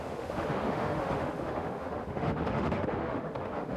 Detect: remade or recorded remade